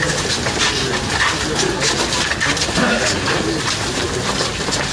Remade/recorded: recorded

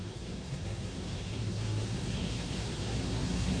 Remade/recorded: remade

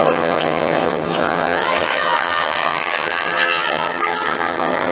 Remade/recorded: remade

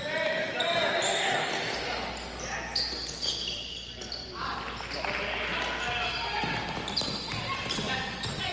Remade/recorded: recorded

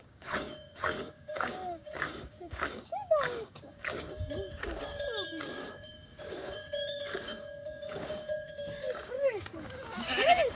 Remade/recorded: remade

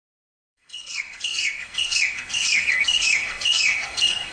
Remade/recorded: remade